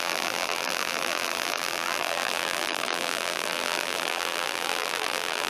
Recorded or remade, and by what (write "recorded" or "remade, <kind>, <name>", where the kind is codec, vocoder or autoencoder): remade, vocoder, BigVGAN v2